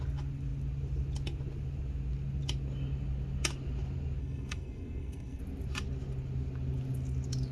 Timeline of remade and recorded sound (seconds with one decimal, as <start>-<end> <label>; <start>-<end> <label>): 0.0-4.2 recorded; 4.2-5.4 remade; 5.4-7.5 recorded